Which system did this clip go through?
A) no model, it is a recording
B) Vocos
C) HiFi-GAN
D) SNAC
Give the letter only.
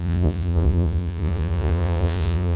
B